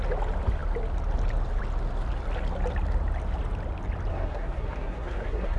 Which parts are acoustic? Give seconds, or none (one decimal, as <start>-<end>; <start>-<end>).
0.0-4.1